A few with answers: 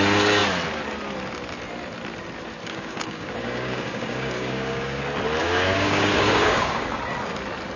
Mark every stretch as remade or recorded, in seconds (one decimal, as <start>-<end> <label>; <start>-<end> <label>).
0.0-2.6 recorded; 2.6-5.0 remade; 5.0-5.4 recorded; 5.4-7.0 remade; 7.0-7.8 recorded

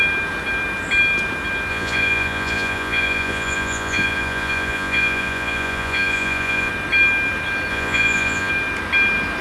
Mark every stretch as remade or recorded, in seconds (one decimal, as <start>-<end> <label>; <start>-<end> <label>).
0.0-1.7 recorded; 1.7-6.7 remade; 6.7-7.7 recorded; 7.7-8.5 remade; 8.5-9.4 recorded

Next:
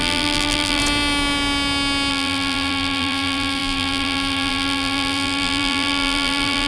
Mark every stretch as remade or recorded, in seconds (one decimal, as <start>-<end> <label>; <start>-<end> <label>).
0.0-0.8 remade; 0.8-2.1 recorded; 2.1-6.7 remade

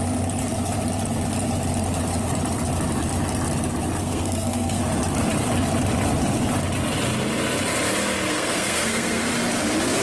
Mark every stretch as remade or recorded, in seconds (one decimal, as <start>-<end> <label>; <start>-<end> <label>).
0.0-4.0 recorded; 4.0-4.8 remade; 4.8-8.3 recorded; 8.3-9.2 remade; 9.2-10.0 recorded

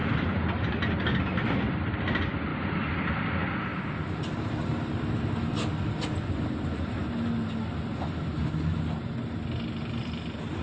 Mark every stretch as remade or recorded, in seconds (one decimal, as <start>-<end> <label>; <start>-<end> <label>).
0.0-1.1 recorded; 1.1-2.5 remade; 2.5-3.1 recorded; 3.1-3.7 remade; 3.7-5.5 recorded; 5.5-7.0 remade; 7.0-10.0 recorded; 10.0-10.6 remade

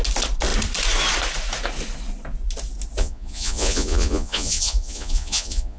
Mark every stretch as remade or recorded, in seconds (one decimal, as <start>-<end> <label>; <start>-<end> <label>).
0.0-3.0 recorded; 3.0-5.8 remade

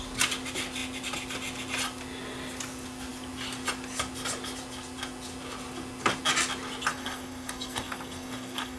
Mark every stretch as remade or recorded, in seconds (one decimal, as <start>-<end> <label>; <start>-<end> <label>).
0.0-6.9 recorded; 6.9-8.8 remade